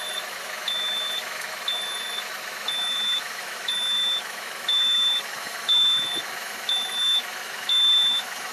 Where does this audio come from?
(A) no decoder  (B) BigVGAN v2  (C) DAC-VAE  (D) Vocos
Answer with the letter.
C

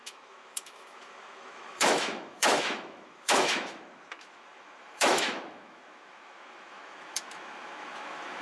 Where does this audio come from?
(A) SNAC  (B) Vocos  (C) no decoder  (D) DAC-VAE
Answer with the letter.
D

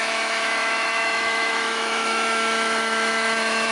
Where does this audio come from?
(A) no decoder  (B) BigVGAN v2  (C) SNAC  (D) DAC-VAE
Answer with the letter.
D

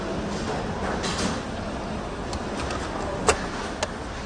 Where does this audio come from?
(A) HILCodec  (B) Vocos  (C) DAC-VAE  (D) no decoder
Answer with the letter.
D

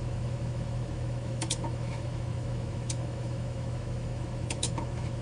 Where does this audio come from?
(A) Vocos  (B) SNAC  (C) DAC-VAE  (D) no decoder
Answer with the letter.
C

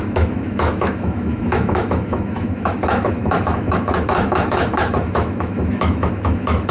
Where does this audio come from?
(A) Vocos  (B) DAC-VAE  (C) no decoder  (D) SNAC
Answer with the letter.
B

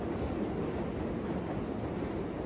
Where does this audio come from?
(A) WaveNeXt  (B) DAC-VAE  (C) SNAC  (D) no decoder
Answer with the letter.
D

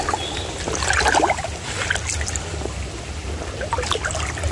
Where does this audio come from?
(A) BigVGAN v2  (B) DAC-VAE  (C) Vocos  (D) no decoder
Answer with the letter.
D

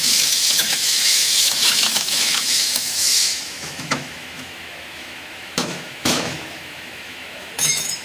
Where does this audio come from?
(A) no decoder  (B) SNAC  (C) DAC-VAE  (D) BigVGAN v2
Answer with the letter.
C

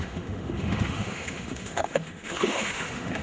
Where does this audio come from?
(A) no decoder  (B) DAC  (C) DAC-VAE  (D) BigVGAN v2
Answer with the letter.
C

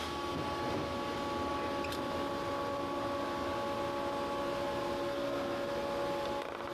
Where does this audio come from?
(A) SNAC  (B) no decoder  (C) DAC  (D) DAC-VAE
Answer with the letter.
B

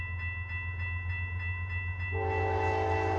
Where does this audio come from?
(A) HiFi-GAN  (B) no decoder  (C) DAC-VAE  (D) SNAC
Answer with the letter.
B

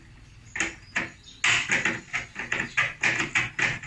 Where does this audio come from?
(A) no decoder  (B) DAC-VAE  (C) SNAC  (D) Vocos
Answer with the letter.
A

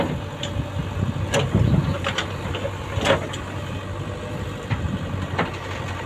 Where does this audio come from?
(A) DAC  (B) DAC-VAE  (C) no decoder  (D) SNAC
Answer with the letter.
C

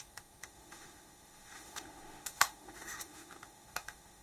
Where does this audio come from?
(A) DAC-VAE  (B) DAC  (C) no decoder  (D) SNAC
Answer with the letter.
A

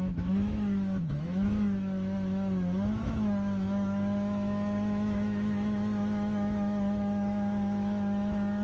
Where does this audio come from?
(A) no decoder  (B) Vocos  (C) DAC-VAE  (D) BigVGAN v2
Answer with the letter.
C